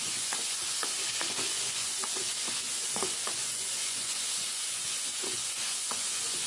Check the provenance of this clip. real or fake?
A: fake